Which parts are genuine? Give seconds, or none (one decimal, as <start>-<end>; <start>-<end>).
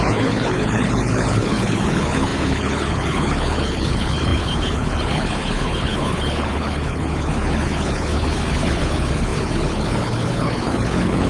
none